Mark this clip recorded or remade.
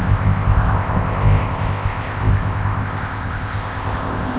remade